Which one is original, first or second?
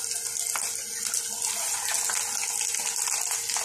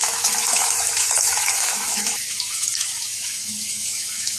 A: first